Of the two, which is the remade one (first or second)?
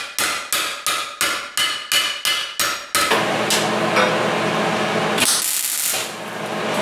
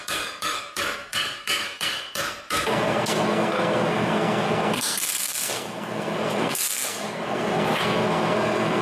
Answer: second